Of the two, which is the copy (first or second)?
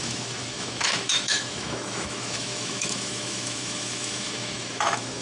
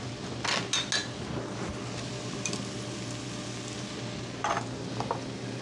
first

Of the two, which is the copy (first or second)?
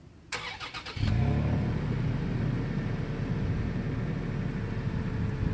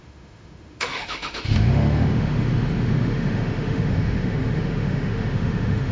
second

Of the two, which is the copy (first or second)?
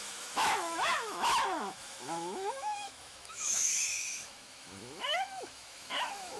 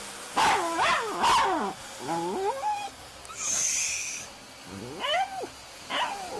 first